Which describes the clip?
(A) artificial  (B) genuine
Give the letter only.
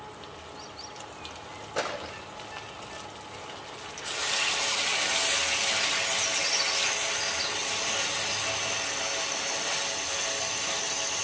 B